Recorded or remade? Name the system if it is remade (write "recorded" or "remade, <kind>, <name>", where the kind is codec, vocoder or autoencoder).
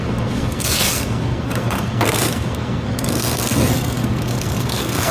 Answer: remade, codec, SNAC